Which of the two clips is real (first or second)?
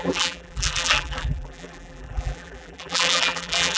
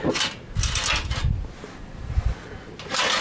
second